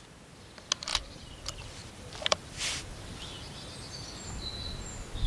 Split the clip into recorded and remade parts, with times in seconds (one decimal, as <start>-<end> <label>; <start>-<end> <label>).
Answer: 0.0-0.9 recorded; 0.9-4.1 remade; 4.1-5.3 recorded

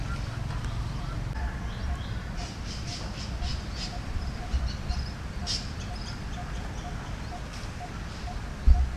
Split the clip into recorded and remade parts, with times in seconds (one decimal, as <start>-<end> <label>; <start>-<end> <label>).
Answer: 0.0-3.5 recorded; 3.5-4.6 remade; 4.6-5.4 recorded; 5.4-5.9 remade; 5.9-9.0 recorded

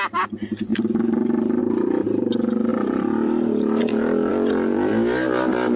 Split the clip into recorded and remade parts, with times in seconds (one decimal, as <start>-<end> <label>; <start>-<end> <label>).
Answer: 0.0-0.7 recorded; 0.7-1.6 remade; 1.6-2.7 recorded; 2.7-3.8 remade; 3.8-4.3 recorded; 4.3-4.9 remade; 4.9-5.8 recorded

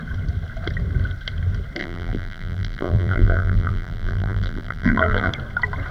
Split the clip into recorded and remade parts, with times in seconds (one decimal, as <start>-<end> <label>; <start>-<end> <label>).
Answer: 0.0-1.8 recorded; 1.8-5.3 remade; 5.3-5.9 recorded

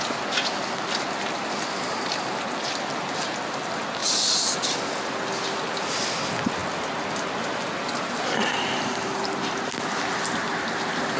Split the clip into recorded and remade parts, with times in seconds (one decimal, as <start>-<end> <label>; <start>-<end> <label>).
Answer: 0.0-6.6 recorded; 6.6-7.3 remade; 7.3-11.2 recorded

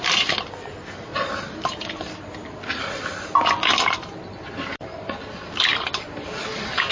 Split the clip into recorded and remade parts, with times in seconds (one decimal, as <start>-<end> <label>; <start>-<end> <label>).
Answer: 0.0-6.9 recorded

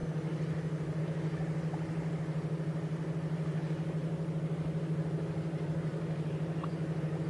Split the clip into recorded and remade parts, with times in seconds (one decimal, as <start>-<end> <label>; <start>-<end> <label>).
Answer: 0.0-7.3 recorded

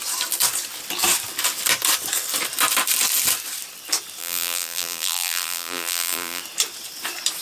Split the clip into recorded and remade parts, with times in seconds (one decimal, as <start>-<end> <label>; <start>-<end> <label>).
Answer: 0.0-4.2 recorded; 4.2-6.4 remade; 6.4-7.4 recorded